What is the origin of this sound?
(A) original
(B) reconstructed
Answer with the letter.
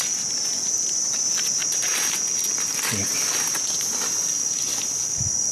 A